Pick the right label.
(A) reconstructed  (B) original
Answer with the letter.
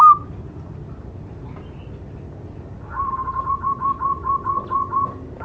B